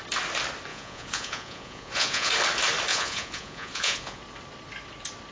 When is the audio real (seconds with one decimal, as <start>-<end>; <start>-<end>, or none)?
0.0-0.7; 2.3-2.9; 4.2-5.3